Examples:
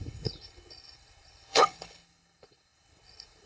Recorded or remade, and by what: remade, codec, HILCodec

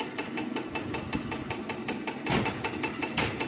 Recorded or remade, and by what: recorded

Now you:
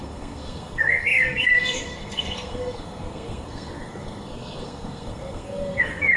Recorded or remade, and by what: remade, codec, SNAC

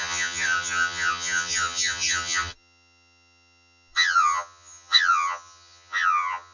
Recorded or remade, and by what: remade, vocoder, HiFi-GAN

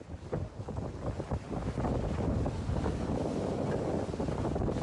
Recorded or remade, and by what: recorded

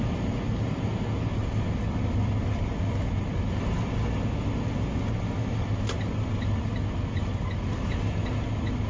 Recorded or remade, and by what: recorded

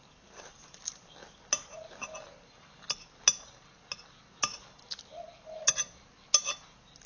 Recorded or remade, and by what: recorded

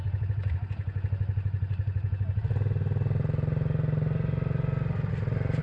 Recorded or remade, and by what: recorded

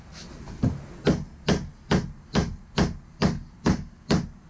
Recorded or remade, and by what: recorded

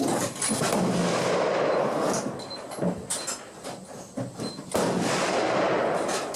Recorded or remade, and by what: recorded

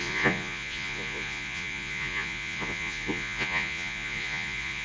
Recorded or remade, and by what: remade, vocoder, Vocos